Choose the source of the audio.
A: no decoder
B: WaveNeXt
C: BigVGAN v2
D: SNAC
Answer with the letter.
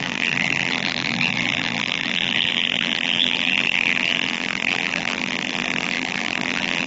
C